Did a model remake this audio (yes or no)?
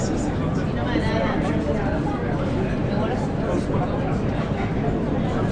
no